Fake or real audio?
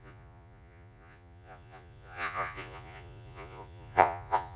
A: fake